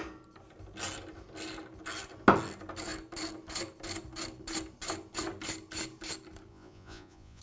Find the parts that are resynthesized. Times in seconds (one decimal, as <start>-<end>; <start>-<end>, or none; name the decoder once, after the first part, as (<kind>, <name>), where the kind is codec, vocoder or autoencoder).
6.5-7.4 (vocoder, Vocos)